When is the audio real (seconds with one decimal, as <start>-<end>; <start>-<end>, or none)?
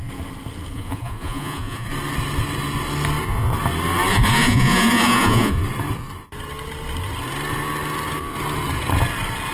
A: 0.0-0.7; 1.9-4.1; 5.5-9.5